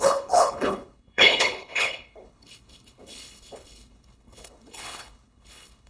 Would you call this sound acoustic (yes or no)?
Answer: no